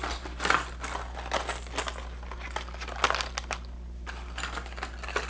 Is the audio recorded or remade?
recorded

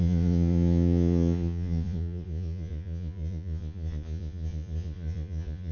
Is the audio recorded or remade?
remade